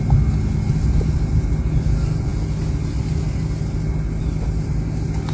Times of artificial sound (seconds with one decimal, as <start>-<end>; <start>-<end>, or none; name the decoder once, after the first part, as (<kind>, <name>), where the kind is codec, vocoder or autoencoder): none